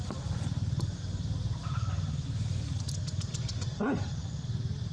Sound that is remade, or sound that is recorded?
recorded